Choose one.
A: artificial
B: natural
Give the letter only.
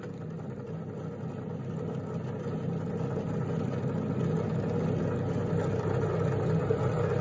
B